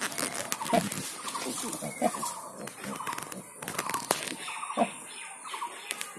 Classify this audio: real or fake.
real